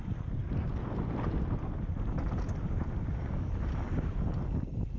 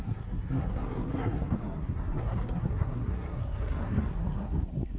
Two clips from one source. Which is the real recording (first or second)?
first